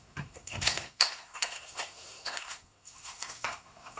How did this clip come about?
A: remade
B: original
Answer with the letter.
A